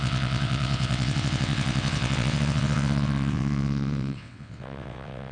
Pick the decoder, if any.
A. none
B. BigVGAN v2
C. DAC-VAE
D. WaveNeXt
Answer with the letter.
D